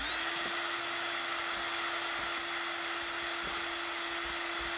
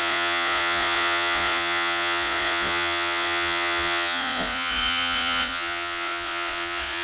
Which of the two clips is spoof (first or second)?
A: second